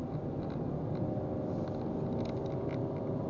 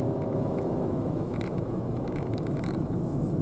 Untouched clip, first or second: first